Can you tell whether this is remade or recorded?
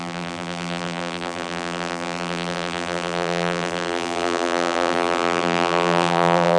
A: remade